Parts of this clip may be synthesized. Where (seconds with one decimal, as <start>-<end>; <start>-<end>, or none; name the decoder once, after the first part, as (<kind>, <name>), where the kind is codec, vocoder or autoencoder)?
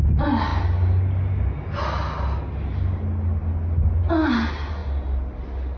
none